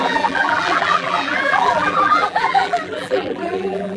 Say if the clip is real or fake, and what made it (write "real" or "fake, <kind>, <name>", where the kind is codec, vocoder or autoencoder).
fake, vocoder, BigVGAN v2